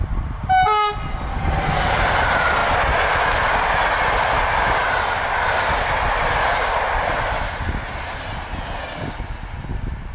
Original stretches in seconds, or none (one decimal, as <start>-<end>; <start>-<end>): 0.0-2.6; 3.4-10.1